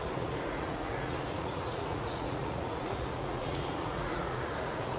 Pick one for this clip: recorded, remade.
remade